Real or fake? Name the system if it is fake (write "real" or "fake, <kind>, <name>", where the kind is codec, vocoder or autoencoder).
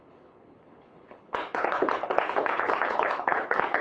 fake, codec, HILCodec